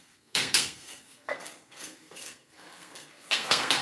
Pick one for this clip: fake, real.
fake